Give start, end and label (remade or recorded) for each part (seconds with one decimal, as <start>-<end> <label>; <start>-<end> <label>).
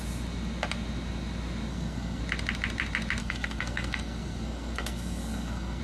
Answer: 0.0-1.7 recorded; 1.7-2.2 remade; 2.2-3.2 recorded; 3.2-5.8 remade